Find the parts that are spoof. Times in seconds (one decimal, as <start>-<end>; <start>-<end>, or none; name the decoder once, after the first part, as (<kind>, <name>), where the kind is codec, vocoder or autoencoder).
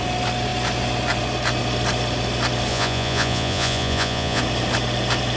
2.7-4.4 (vocoder, Vocos)